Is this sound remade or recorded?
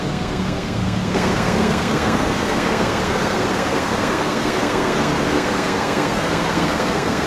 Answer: remade